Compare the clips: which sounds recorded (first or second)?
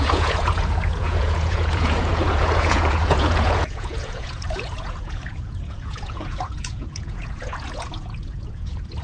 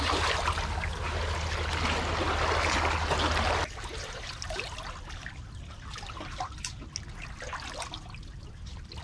second